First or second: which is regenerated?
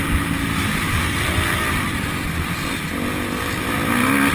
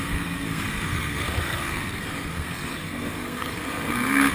second